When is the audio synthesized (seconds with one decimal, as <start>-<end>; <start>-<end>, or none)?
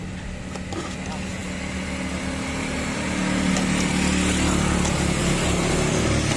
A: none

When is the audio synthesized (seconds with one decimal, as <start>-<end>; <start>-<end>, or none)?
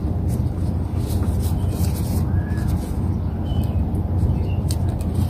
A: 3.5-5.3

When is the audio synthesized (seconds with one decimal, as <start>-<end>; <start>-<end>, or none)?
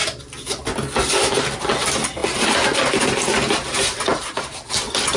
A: 4.1-4.7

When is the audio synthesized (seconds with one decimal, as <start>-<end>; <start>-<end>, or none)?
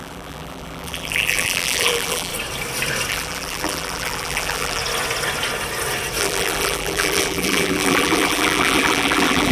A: 0.0-2.3; 3.1-4.8; 6.2-9.5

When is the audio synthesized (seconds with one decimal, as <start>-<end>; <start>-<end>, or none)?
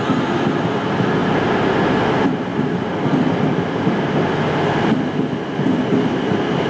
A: none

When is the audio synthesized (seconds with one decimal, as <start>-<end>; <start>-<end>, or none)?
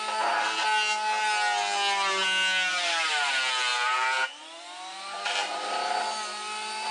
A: 2.7-3.3; 3.7-5.7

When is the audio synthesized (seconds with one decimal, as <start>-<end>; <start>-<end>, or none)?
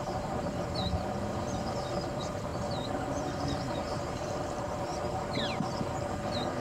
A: 0.0-2.5; 3.6-4.9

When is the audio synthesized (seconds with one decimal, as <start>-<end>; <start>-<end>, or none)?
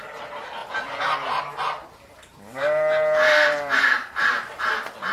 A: 2.3-4.5